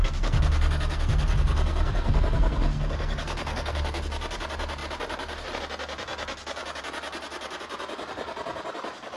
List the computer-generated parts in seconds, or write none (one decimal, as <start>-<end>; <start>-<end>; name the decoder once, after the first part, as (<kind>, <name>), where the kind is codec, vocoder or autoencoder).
0.0-4.0 (codec, SNAC)